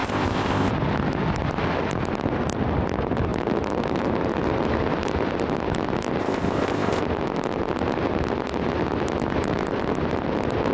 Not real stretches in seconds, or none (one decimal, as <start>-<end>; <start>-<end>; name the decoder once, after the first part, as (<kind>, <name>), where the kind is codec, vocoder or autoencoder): 0.0-0.7 (codec, ZipCodec); 6.2-7.0

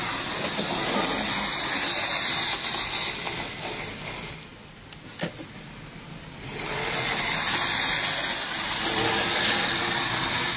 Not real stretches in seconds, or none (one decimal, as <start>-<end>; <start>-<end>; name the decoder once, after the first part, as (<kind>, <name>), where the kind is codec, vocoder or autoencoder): none

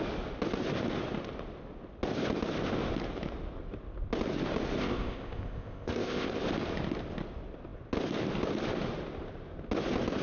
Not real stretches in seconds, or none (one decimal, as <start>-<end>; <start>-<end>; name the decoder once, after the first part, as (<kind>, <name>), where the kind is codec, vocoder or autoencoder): 4.8-6.4 (codec, ZipCodec)

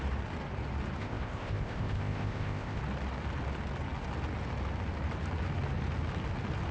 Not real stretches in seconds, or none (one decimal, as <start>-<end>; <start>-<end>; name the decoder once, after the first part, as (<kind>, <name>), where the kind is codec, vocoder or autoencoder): 1.0-2.8 (codec, ZipCodec)